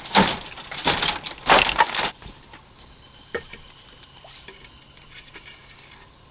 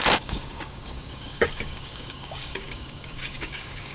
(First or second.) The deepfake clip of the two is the second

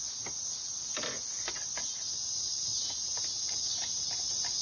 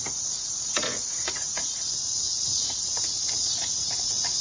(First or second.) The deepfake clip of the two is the second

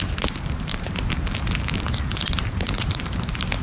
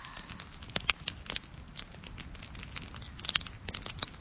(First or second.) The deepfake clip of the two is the first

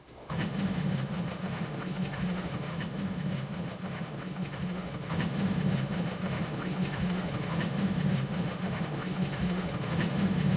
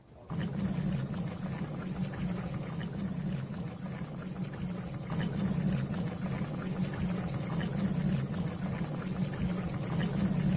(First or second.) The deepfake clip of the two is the first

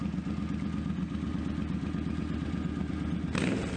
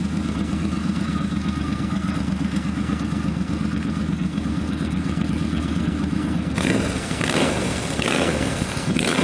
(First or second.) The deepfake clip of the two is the second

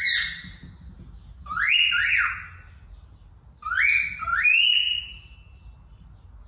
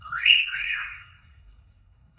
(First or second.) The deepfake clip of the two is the second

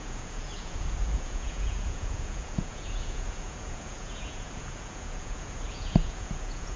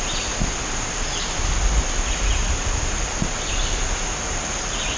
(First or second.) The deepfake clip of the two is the first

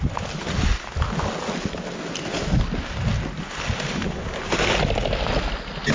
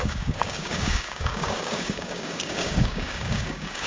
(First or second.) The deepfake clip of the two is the second